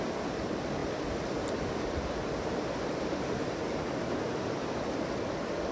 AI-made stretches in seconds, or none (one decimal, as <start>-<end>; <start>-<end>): 0.0-5.7